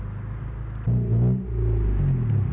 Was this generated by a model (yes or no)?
no